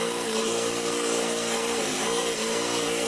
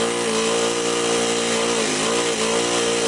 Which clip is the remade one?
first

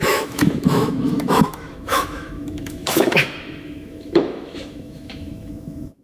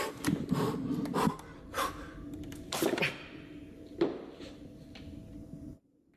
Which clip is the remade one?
first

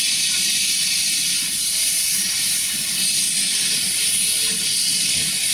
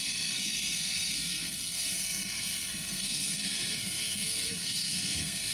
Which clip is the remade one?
second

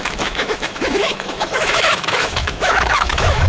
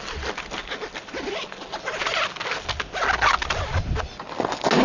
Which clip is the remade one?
first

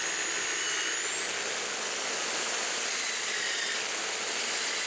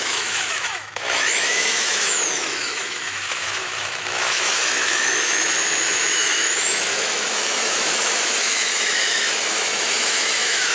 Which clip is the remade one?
second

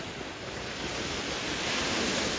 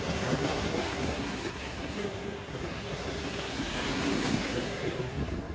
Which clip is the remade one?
second